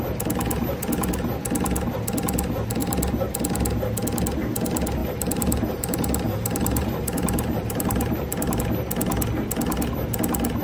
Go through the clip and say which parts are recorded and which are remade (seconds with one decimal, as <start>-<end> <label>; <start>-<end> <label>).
0.0-5.0 recorded; 5.0-8.6 remade; 8.6-10.6 recorded